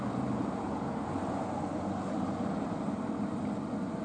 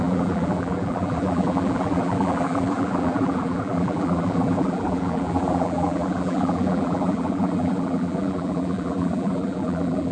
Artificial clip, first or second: second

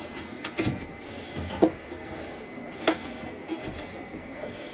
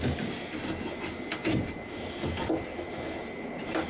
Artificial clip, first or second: first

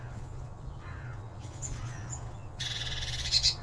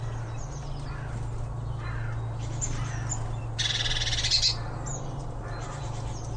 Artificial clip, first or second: first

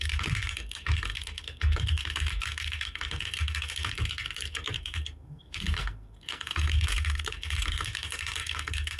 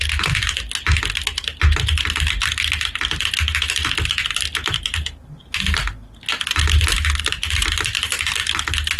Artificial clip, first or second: first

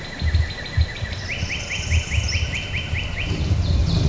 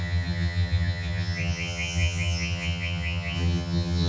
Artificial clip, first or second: second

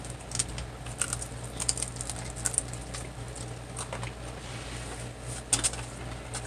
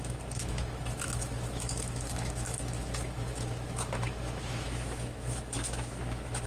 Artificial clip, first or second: second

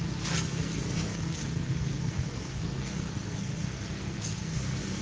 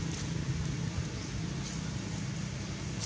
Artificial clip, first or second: first